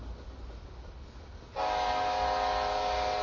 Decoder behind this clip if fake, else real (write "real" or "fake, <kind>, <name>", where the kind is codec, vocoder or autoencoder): real